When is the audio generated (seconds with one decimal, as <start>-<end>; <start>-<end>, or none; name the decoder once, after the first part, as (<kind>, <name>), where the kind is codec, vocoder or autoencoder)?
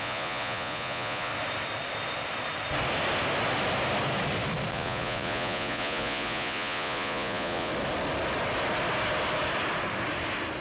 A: 0.0-1.3 (vocoder, Vocos); 4.7-7.7